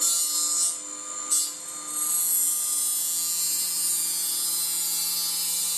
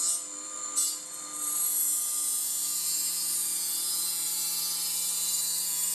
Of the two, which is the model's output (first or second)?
second